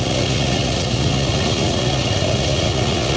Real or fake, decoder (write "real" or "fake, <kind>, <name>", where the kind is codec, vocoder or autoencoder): fake, vocoder, Vocos